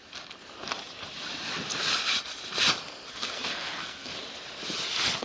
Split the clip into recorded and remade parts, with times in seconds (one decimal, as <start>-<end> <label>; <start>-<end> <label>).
0.0-3.1 recorded; 3.1-4.1 remade; 4.1-5.2 recorded